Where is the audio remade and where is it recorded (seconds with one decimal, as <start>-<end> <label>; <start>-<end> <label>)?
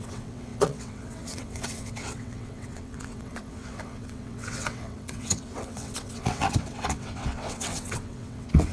0.0-8.7 remade